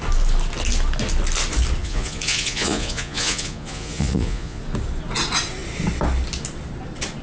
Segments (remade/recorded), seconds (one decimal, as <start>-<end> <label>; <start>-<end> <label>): 0.0-1.8 recorded; 1.8-4.6 remade; 4.6-7.2 recorded